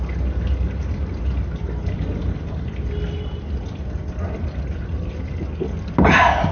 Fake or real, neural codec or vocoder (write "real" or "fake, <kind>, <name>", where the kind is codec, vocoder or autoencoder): real